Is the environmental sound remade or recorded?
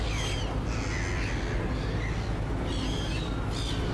recorded